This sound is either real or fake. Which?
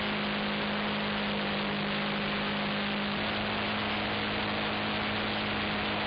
real